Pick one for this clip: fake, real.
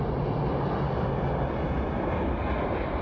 real